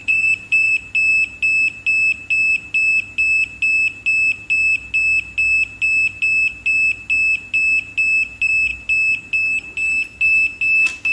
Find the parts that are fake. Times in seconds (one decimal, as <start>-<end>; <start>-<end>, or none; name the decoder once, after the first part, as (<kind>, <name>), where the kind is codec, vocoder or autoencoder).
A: 0.0-0.7 (vocoder, BigVGAN v2)